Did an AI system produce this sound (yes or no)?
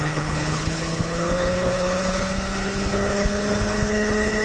yes